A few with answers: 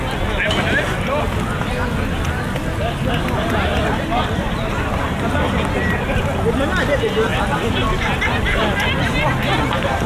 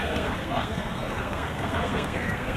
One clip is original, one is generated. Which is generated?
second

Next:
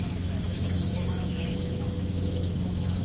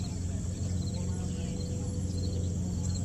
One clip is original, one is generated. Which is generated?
first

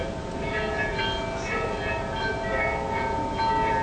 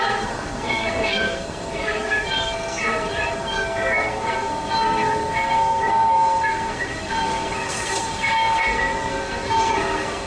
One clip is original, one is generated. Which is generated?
second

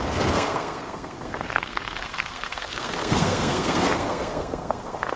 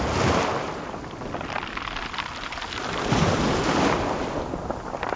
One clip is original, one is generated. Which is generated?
first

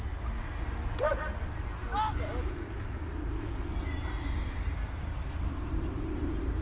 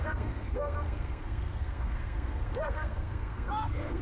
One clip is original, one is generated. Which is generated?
second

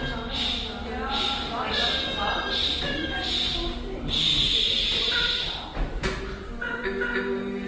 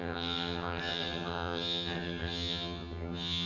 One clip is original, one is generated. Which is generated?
second